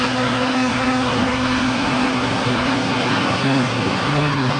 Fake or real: fake